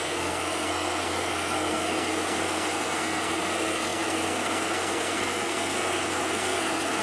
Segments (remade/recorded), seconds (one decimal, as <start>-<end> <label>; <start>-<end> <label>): 0.0-7.0 remade